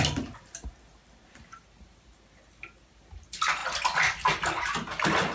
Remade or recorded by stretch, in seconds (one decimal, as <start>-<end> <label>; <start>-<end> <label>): 0.0-5.3 recorded